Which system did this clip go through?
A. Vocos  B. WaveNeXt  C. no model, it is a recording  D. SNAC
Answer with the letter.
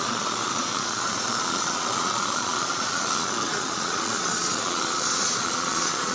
A